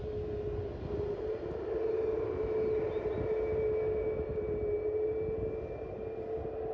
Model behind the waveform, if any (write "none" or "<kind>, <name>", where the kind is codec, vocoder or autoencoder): none